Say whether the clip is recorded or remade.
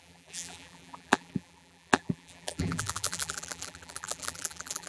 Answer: remade